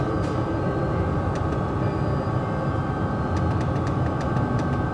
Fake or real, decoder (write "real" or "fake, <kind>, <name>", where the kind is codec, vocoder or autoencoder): fake, vocoder, BigVGAN v2